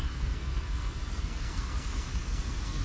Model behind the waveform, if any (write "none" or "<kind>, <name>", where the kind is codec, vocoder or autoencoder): codec, SNAC